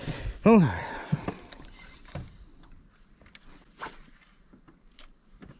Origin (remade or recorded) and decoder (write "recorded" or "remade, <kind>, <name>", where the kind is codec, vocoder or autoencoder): recorded